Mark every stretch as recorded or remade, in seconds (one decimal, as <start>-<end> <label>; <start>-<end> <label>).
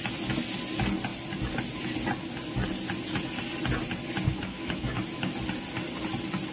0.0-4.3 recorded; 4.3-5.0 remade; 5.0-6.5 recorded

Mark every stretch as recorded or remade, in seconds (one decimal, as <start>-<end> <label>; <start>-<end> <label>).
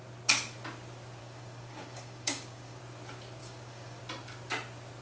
0.0-1.2 recorded; 1.2-2.8 remade; 2.8-3.4 recorded; 3.4-4.0 remade; 4.0-5.0 recorded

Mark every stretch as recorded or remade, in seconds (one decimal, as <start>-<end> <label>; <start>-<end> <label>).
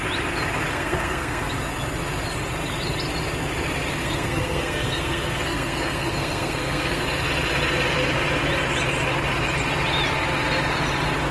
0.0-0.7 recorded; 0.7-1.5 remade; 1.5-4.0 recorded; 4.0-7.0 remade; 7.0-11.3 recorded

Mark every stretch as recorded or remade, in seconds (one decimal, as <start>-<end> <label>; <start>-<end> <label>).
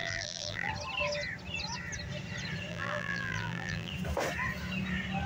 0.0-0.7 remade; 0.7-2.7 recorded; 2.7-3.9 remade; 3.9-5.3 recorded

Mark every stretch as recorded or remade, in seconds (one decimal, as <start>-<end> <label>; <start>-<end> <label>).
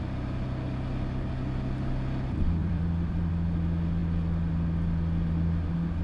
0.0-2.6 recorded; 2.6-3.3 remade; 3.3-6.0 recorded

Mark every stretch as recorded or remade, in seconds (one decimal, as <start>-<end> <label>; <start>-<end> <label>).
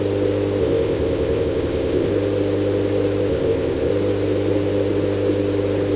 0.0-0.6 recorded; 0.6-2.1 remade; 2.1-3.3 recorded; 3.3-3.9 remade; 3.9-6.0 recorded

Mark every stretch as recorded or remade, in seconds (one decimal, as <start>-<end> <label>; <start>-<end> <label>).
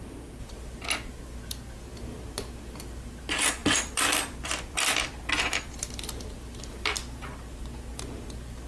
0.0-1.9 recorded; 1.9-2.4 remade; 2.4-3.6 recorded; 3.6-8.7 remade